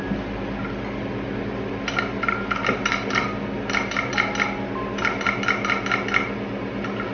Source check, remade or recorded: recorded